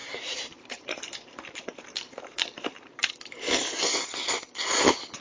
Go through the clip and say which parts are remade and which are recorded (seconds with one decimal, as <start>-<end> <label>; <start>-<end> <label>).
0.0-3.1 remade; 3.1-5.2 recorded